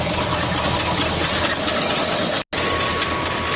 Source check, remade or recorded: recorded